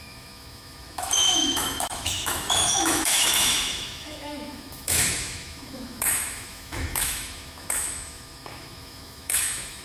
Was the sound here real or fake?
fake